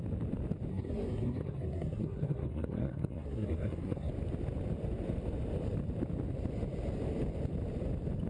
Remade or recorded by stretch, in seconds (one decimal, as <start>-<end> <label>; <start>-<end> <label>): 0.0-0.7 recorded; 0.7-4.1 remade; 4.1-8.3 recorded